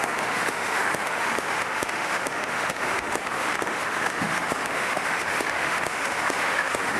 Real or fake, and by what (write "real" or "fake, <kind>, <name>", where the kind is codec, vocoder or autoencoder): fake, autoencoder, DAC-VAE